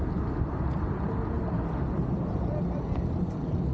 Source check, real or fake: fake